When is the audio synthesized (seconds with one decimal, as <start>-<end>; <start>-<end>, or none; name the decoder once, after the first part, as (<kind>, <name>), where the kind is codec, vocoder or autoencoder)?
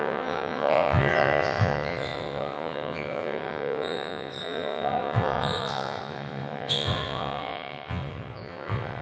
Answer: 0.0-9.0 (vocoder, WaveNeXt)